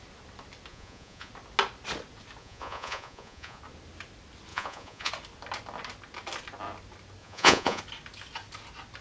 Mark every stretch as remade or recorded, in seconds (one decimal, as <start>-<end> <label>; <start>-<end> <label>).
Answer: 0.0-0.7 recorded; 0.7-1.3 remade; 1.3-2.4 recorded; 2.4-3.6 remade; 3.6-4.5 recorded; 4.5-5.1 remade; 5.1-7.2 recorded; 7.2-7.8 remade; 7.8-9.0 recorded